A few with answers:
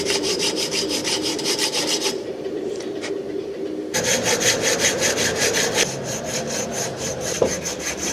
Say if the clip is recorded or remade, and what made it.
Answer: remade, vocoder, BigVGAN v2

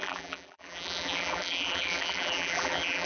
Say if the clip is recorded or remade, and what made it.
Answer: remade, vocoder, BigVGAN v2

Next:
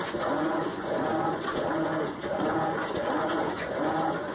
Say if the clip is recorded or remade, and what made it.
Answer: remade, vocoder, Vocos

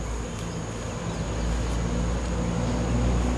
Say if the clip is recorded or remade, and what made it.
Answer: recorded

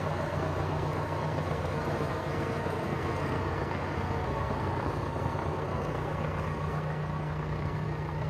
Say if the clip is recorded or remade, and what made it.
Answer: remade, codec, SNAC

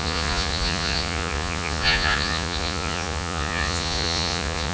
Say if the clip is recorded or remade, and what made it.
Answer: remade, vocoder, Vocos